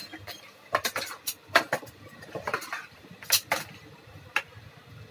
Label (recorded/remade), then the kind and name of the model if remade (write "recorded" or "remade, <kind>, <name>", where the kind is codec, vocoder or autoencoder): recorded